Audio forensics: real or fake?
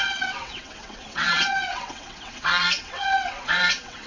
fake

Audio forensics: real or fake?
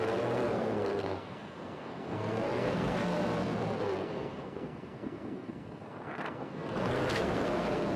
fake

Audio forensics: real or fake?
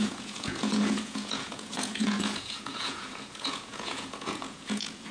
fake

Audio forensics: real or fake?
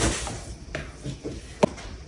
real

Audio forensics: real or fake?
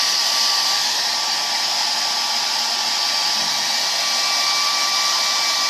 real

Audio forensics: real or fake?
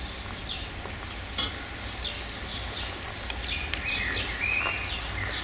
real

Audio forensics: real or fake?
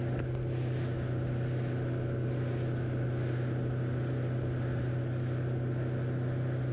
real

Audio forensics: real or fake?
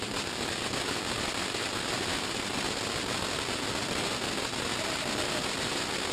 real